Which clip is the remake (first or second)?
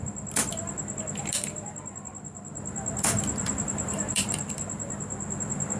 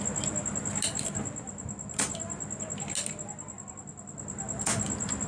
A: first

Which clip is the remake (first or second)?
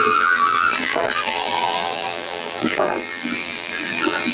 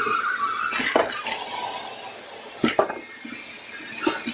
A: first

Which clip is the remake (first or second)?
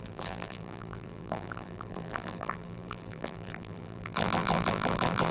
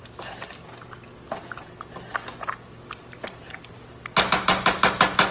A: first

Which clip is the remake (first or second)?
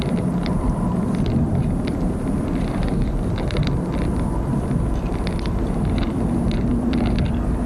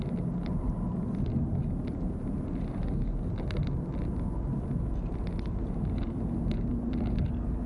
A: first